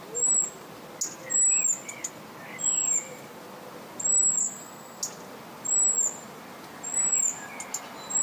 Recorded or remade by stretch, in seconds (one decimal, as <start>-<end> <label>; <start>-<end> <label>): 0.0-4.4 recorded; 4.4-5.0 remade; 5.0-8.2 recorded